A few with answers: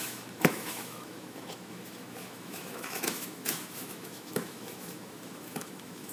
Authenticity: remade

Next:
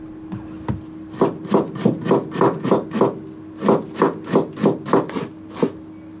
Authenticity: recorded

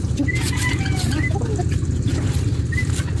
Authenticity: recorded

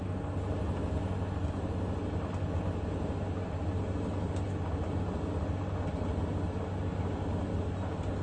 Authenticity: recorded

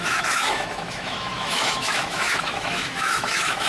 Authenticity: remade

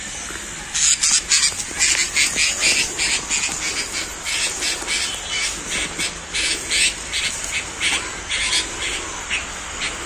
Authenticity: recorded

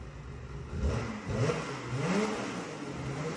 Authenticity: recorded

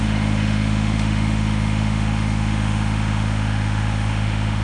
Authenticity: remade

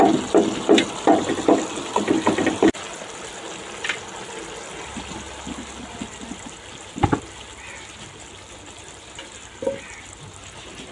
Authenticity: recorded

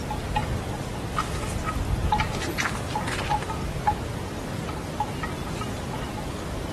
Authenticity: recorded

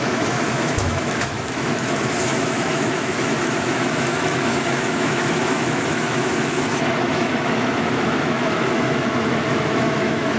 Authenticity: remade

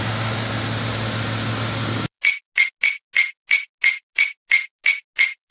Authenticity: recorded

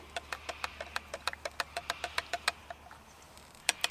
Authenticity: recorded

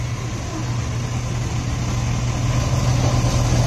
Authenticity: recorded